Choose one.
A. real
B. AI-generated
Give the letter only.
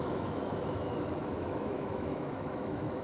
B